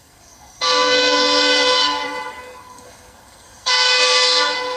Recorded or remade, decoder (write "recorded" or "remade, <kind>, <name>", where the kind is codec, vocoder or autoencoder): remade, codec, SNAC